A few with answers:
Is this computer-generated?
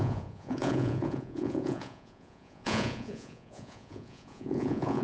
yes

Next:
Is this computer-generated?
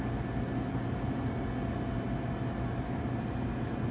no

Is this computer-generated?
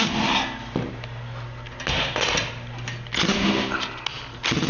no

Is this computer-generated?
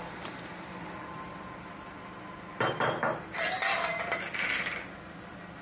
no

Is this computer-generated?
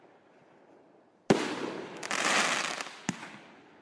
no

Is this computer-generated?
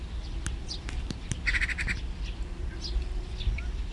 no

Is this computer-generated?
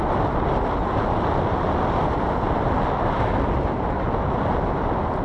no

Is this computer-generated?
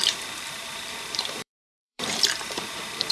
yes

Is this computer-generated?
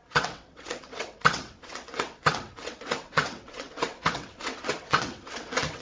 yes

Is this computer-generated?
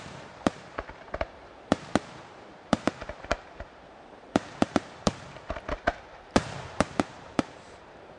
yes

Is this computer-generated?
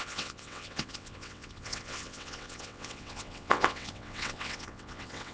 yes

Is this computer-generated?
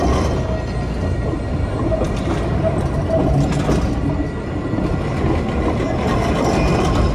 no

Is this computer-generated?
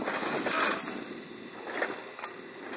no